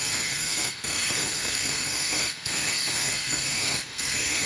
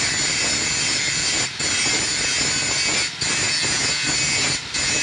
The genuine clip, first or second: second